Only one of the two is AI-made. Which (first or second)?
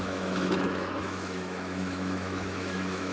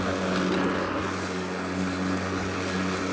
first